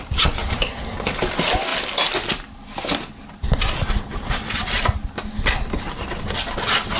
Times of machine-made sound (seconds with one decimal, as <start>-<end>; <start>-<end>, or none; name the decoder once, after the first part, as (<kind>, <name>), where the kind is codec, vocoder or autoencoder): none